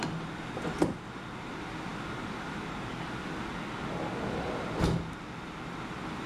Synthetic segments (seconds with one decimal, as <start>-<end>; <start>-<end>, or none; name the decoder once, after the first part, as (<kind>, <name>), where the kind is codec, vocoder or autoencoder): none